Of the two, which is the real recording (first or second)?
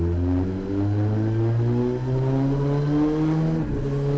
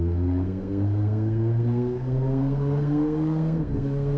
first